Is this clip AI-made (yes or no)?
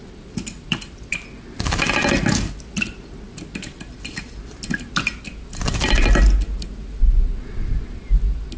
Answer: no